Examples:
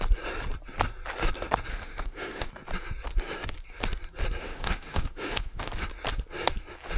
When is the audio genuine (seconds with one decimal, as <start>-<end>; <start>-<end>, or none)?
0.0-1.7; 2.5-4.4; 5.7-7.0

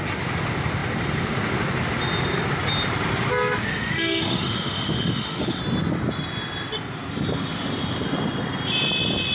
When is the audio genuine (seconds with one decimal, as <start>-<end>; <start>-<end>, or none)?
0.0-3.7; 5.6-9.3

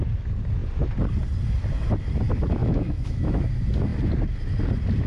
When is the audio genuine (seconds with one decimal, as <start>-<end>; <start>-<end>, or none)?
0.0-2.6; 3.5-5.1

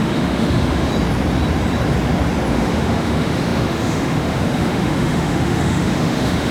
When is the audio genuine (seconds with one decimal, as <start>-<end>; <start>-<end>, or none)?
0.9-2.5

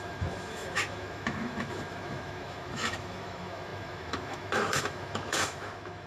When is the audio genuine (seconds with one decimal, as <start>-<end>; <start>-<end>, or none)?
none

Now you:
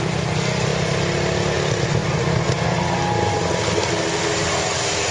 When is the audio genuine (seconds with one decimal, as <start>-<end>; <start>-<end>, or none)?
0.0-5.1

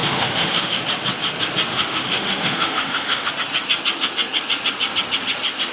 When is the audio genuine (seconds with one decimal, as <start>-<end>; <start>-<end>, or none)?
0.8-1.7; 3.3-5.7